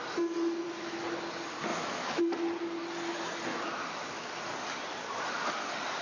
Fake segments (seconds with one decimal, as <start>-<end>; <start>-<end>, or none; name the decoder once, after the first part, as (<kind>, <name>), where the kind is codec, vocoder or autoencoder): 1.7-2.2 (autoencoder, DAC-VAE); 3.5-4.3